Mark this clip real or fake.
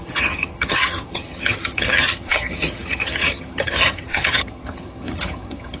fake